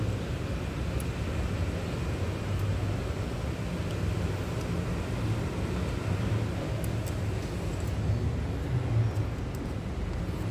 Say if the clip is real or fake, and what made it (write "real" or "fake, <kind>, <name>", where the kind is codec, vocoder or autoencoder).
real